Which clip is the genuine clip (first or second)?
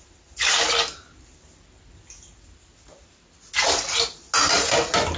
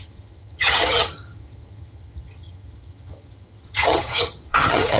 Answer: first